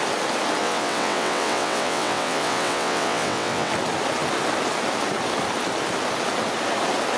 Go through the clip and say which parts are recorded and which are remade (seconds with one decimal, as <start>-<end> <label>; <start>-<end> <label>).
0.0-0.6 recorded; 0.6-3.7 remade; 3.7-7.2 recorded